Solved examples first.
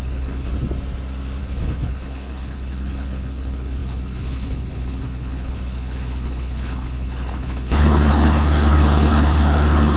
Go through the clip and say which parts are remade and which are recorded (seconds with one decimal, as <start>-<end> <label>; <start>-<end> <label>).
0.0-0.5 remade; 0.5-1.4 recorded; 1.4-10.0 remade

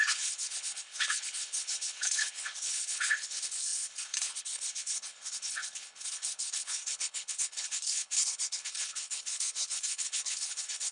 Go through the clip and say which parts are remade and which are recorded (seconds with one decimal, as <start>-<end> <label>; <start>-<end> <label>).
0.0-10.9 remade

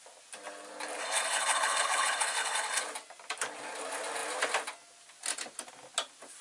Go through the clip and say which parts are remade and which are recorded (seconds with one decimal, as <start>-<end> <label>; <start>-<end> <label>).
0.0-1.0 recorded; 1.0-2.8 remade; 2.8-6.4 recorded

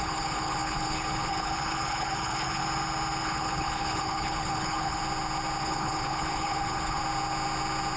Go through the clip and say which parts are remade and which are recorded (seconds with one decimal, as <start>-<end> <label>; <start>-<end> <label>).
0.0-2.6 remade; 2.6-3.2 recorded; 3.2-5.0 remade; 5.0-5.6 recorded; 5.6-7.0 remade; 7.0-8.0 recorded

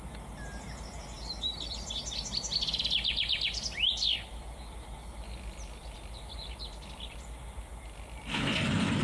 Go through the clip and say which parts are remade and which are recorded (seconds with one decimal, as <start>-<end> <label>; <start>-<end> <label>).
0.0-9.0 recorded

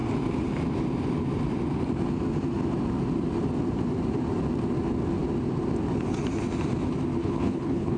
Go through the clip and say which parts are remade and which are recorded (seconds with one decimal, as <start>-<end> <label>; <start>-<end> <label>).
0.0-7.2 recorded; 7.2-8.0 remade